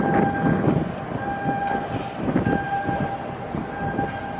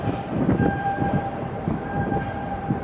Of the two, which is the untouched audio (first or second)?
first